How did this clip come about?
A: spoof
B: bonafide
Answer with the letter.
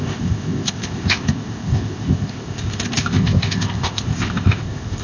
A